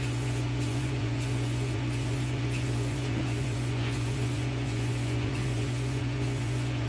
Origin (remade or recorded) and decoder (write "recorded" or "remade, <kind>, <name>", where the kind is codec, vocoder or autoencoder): remade, vocoder, Vocos